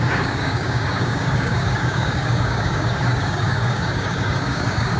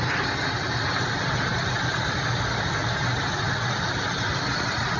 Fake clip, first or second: first